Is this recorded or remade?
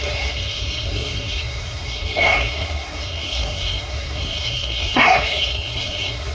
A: remade